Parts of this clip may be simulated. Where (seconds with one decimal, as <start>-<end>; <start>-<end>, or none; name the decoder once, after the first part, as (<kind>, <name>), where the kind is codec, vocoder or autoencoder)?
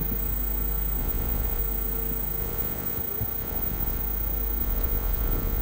1.0-1.6 (vocoder, Vocos); 2.4-3.0; 3.4-4.0; 4.6-5.6